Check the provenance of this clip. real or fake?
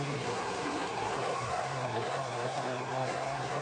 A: fake